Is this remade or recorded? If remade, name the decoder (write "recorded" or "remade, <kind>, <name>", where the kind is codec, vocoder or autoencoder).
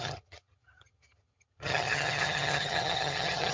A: remade, vocoder, HiFi-GAN